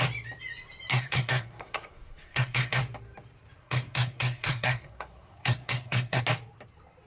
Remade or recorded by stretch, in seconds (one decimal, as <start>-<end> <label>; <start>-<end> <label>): 0.0-0.9 recorded; 0.9-2.8 remade; 2.8-3.6 recorded; 3.6-6.2 remade; 6.2-7.1 recorded